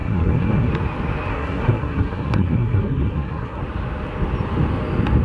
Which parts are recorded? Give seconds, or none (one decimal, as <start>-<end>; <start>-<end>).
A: 0.7-1.3; 3.6-5.2